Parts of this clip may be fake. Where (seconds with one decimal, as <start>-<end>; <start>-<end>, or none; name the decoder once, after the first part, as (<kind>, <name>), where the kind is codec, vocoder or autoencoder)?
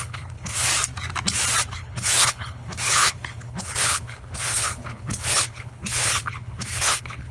0.0-0.7 (codec, HILCodec); 1.7-7.3